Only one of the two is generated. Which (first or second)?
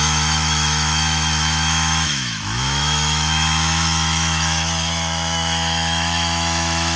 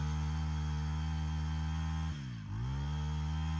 first